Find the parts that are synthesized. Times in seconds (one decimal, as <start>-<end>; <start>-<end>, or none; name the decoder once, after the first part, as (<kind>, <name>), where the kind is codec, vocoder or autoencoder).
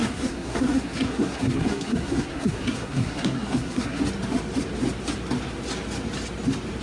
0.0-4.0 (codec, SNAC)